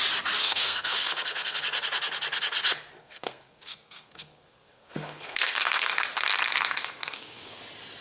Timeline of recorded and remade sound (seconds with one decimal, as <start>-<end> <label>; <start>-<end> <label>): 0.0-0.4 recorded; 0.4-1.6 remade; 1.6-3.0 recorded; 3.0-5.9 remade; 5.9-6.8 recorded; 6.8-7.6 remade; 7.6-8.0 recorded